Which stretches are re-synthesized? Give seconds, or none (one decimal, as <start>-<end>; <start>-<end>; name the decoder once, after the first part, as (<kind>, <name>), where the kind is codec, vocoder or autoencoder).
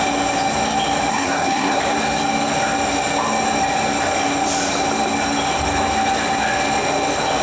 1.1-1.8 (codec, SNAC)